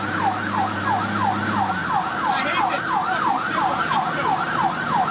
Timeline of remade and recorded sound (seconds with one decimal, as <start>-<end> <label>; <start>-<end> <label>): 0.0-1.8 remade; 1.8-5.1 recorded